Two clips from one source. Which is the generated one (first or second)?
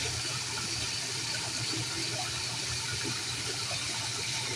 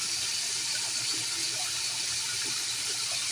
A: second